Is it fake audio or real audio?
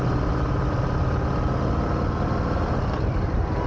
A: real